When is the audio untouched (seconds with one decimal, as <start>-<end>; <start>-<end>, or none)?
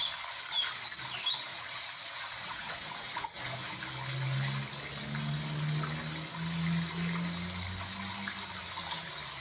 0.0-1.5; 3.8-9.4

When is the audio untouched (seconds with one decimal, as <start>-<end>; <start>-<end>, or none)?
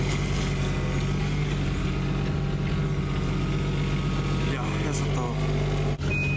0.0-6.4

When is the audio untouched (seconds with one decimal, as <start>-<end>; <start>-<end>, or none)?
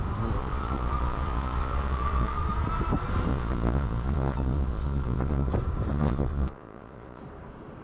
0.0-0.4; 2.4-3.3; 5.5-5.9; 7.2-7.8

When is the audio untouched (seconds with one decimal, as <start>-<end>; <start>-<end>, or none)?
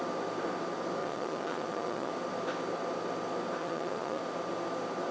0.0-1.0; 2.1-3.6; 4.2-5.1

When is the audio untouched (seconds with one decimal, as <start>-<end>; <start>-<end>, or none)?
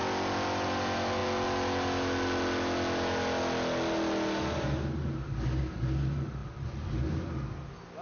0.0-8.0